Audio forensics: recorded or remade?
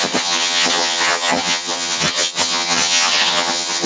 remade